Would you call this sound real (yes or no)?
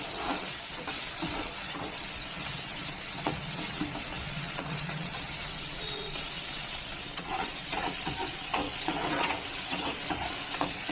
no